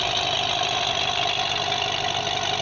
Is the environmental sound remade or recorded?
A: recorded